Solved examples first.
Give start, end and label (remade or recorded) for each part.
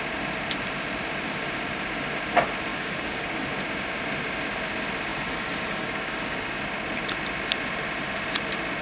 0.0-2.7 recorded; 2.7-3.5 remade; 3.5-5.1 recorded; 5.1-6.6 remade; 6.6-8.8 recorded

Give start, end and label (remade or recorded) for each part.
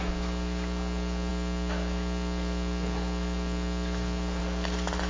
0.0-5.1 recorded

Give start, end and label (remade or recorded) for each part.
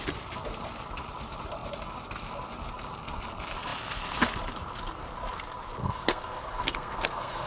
0.0-5.8 recorded; 5.8-7.5 remade